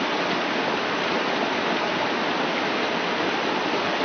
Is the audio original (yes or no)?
yes